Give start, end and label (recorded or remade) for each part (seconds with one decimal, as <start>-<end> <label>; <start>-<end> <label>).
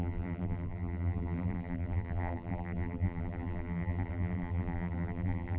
0.0-5.6 remade